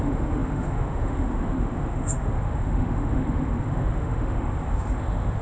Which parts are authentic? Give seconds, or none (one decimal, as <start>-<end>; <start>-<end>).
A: none